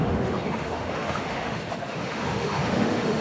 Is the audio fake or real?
fake